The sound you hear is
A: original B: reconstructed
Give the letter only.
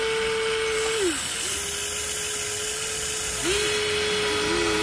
A